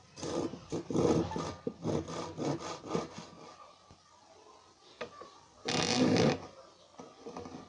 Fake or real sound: real